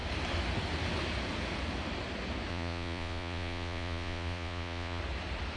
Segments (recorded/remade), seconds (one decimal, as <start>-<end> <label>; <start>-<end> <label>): 0.0-2.5 recorded; 2.5-5.0 remade; 5.0-5.6 recorded